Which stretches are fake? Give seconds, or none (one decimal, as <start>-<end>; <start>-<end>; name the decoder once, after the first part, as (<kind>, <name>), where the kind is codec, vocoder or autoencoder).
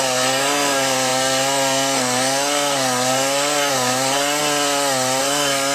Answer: 0.0-4.4 (codec, SNAC); 5.2-5.7